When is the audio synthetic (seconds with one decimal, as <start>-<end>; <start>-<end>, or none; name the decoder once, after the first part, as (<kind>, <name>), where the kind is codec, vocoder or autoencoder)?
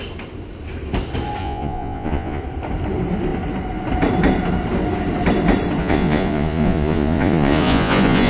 1.4-2.4 (vocoder, Vocos); 5.8-8.3